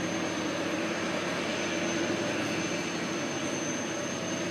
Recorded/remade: recorded